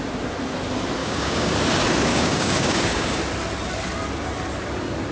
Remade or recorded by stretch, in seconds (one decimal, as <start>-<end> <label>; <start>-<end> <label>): 0.0-1.0 recorded; 1.0-1.5 remade; 1.5-2.1 recorded; 2.1-3.2 remade; 3.2-5.1 recorded